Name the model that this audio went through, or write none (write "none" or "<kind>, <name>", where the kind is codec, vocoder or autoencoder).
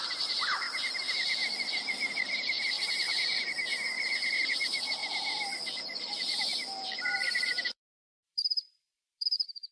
vocoder, BigVGAN v2